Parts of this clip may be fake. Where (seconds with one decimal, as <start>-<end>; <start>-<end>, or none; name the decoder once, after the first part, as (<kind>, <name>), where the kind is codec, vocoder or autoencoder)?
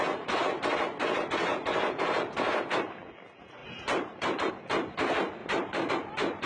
3.6-4.5 (vocoder, BigVGAN v2); 5.4-5.9